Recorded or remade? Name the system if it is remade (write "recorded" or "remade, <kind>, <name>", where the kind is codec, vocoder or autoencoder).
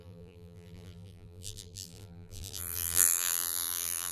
remade, vocoder, BigVGAN v2